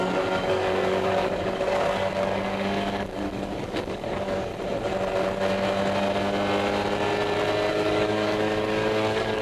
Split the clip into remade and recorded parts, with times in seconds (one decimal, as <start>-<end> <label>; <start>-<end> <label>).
0.0-4.5 remade; 4.5-7.7 recorded; 7.7-9.4 remade